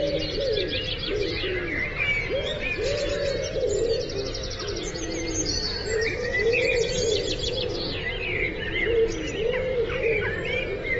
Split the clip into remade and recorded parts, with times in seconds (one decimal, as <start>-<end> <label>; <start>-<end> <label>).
0.0-11.0 recorded